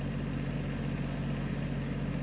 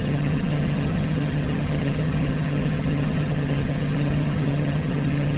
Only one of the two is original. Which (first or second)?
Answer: first